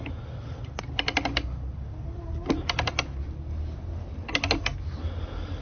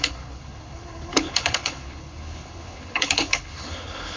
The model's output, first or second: second